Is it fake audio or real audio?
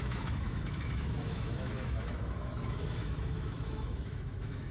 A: fake